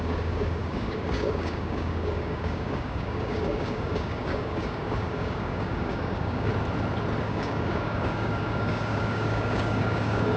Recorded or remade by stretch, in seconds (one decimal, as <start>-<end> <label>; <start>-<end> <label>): 0.0-6.5 remade; 6.5-7.2 recorded; 7.2-10.4 remade